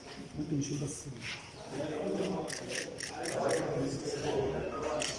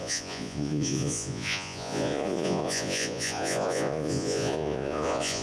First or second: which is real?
first